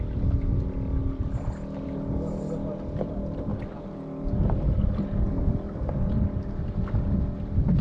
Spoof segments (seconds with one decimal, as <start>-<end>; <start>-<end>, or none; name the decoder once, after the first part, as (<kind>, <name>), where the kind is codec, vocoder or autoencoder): none